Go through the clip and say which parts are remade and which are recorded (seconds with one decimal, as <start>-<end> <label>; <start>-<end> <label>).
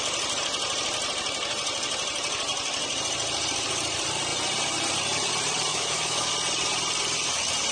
0.0-5.7 recorded; 5.7-6.3 remade; 6.3-7.7 recorded